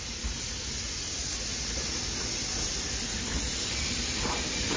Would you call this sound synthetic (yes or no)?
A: no